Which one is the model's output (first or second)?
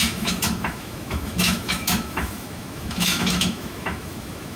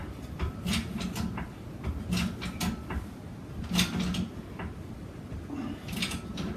first